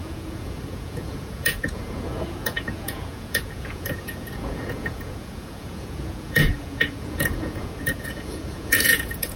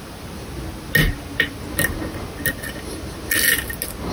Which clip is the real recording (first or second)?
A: second